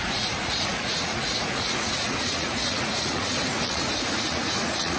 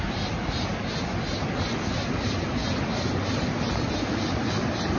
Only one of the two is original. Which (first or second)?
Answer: second